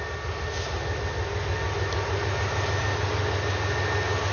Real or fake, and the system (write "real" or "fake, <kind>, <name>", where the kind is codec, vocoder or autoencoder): real